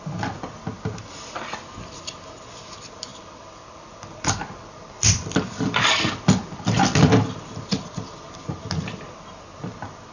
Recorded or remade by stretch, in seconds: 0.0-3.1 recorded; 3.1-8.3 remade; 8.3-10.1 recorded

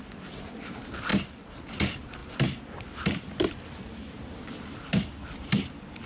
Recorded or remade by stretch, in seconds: 0.0-6.1 recorded

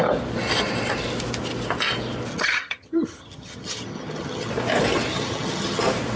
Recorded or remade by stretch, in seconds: 0.0-2.3 recorded; 2.3-4.5 remade; 4.5-5.1 recorded; 5.1-5.8 remade; 5.8-6.2 recorded

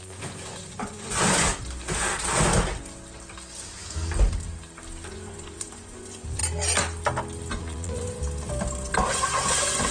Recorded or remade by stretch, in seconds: 0.0-1.5 remade; 1.5-5.1 recorded; 5.1-6.4 remade; 6.4-7.5 recorded; 7.5-8.2 remade; 8.2-9.0 recorded; 9.0-9.9 remade

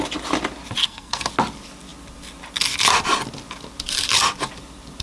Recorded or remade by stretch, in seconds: 0.0-0.8 recorded; 0.8-1.3 remade; 1.3-5.0 recorded